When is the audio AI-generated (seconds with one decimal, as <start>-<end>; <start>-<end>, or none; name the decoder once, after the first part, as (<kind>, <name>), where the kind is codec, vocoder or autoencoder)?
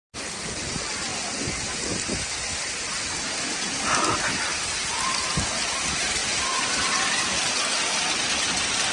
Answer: 6.2-7.5 (vocoder, BigVGAN v2)